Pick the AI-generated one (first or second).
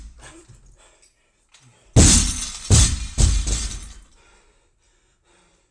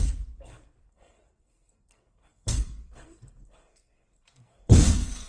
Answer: second